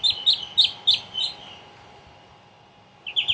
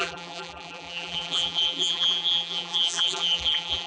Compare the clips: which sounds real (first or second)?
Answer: first